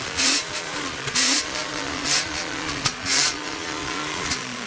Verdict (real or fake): fake